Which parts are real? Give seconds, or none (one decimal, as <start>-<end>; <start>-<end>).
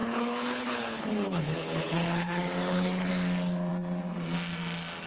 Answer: 3.1-5.1